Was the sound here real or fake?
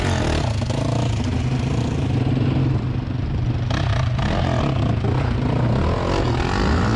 real